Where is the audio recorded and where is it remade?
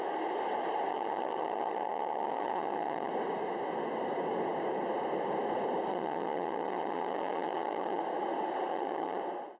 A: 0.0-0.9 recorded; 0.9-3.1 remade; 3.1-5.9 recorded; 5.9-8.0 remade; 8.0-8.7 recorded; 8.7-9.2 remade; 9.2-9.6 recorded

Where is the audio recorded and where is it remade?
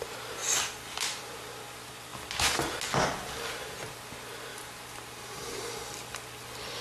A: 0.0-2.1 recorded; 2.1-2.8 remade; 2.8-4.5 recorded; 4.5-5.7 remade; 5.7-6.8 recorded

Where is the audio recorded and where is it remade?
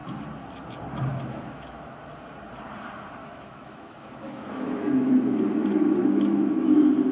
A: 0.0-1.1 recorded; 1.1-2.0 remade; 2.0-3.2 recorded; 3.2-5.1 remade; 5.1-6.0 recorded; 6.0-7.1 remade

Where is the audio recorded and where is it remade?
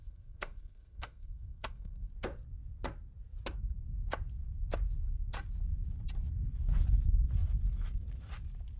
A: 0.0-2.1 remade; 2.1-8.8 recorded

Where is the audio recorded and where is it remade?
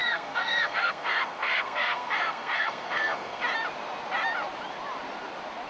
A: 0.0-3.4 remade; 3.4-5.7 recorded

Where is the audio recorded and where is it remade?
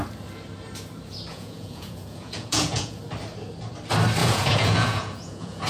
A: 0.0-1.3 recorded; 1.3-3.0 remade; 3.0-4.2 recorded; 4.2-5.7 remade